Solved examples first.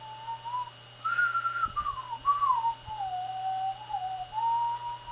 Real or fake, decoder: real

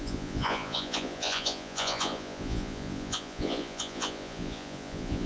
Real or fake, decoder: fake, vocoder, Vocos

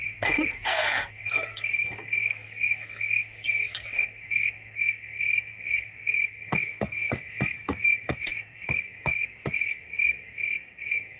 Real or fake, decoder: fake, codec, SNAC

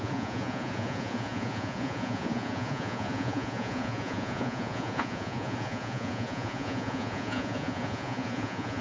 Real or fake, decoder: fake, vocoder, Vocos